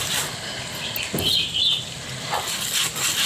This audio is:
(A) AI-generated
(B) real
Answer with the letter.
B